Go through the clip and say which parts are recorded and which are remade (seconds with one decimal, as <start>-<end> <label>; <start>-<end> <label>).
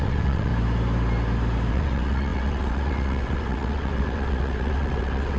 0.0-0.5 remade; 0.5-1.7 recorded; 1.7-5.4 remade